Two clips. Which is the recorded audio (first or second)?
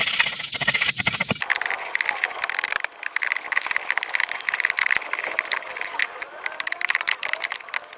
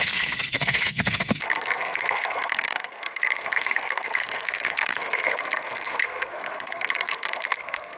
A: first